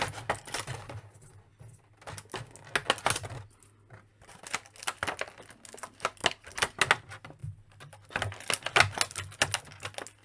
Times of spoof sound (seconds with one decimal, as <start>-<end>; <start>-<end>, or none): none